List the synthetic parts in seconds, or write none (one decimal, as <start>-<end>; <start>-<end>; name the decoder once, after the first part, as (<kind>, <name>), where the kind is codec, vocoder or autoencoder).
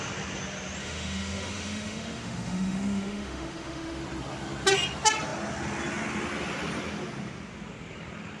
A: 0.8-4.0 (autoencoder, DAC-VAE)